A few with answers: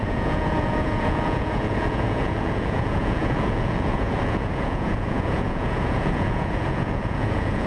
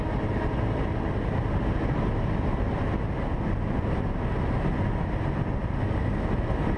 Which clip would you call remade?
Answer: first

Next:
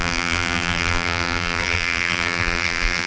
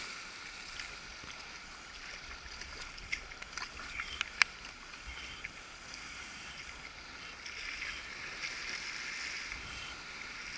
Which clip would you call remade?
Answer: first